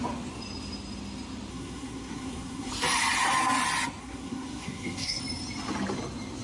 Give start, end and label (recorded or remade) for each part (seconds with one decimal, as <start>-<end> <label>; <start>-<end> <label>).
0.0-1.5 recorded; 1.5-2.7 remade; 2.7-4.0 recorded; 4.0-5.2 remade; 5.2-6.4 recorded